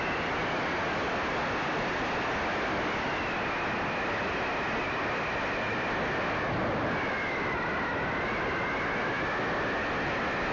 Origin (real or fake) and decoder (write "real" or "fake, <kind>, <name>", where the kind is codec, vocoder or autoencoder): real